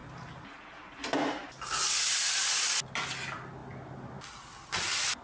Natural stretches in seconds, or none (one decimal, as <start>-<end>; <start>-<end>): 0.0-5.2